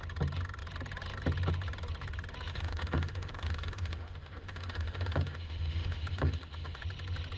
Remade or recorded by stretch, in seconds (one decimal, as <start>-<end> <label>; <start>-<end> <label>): 0.0-2.5 recorded; 2.5-6.8 remade; 6.8-7.4 recorded